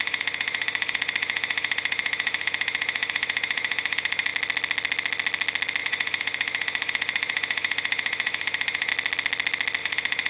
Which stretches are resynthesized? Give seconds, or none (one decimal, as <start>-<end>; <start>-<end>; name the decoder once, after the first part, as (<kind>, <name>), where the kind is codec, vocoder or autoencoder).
0.0-4.3 (vocoder, Vocos); 5.8-8.9; 9.8-10.3